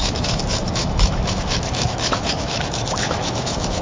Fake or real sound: fake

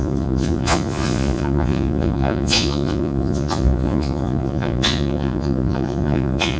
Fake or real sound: fake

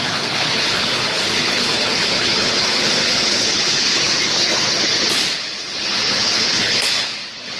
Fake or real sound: fake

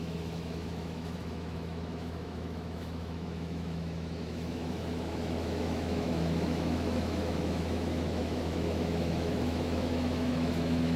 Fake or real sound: fake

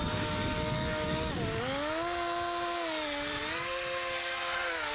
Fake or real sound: real